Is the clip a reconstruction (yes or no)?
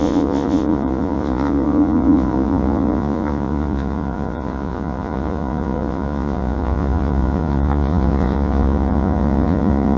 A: yes